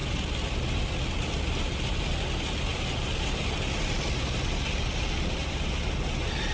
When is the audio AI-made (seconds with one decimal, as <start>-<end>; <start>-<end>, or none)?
0.0-2.3; 2.7-4.3; 5.4-6.0